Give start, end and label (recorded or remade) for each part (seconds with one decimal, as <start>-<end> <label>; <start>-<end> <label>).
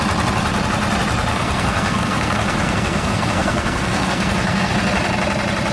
0.0-1.3 recorded; 1.3-4.7 remade; 4.7-5.7 recorded